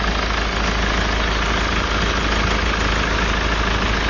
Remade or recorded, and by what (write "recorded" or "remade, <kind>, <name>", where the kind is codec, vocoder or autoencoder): recorded